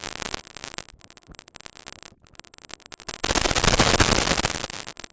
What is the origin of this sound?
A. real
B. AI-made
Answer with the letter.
A